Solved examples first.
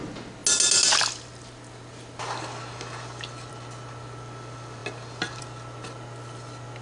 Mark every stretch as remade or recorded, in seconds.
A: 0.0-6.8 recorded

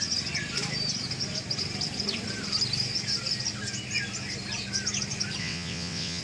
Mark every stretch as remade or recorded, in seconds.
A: 0.0-5.4 recorded; 5.4-6.2 remade

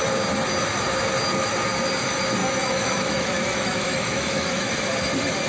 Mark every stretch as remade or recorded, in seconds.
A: 0.0-2.4 recorded; 2.4-4.7 remade; 4.7-5.5 recorded

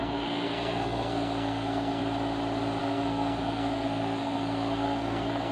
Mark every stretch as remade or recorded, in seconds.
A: 0.0-2.0 remade; 2.0-2.8 recorded; 2.8-5.5 remade

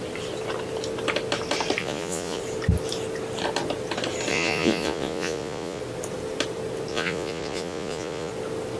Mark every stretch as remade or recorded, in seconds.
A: 0.0-1.8 recorded; 1.8-2.4 remade; 2.4-4.3 recorded; 4.3-5.8 remade; 5.8-6.9 recorded; 6.9-8.3 remade; 8.3-8.8 recorded

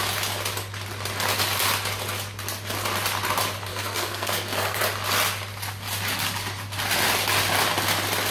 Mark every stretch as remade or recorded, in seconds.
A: 0.0-3.7 recorded; 3.7-4.8 remade; 4.8-8.3 recorded

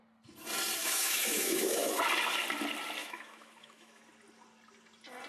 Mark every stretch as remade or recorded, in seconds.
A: 0.0-0.8 recorded; 0.8-2.0 remade; 2.0-3.0 recorded; 3.0-4.0 remade; 4.0-5.3 recorded

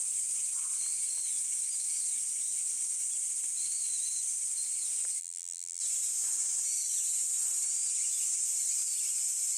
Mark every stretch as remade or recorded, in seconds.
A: 0.0-5.2 recorded; 5.2-5.8 remade; 5.8-9.6 recorded